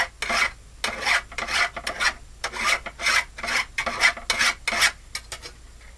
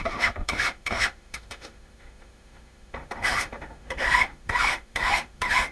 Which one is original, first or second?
first